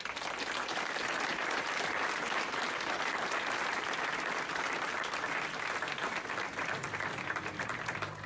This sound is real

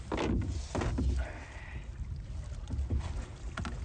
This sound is real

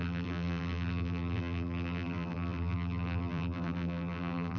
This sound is fake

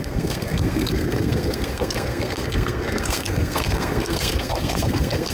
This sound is fake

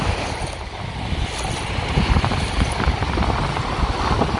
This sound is real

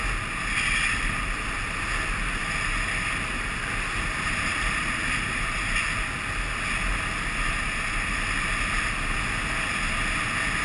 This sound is real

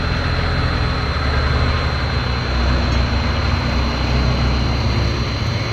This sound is real